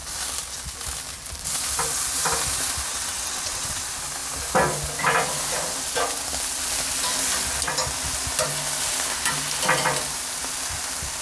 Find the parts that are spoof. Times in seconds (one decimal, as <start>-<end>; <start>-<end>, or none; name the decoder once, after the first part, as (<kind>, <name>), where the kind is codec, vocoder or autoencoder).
2.9-3.8 (vocoder, WaveNeXt)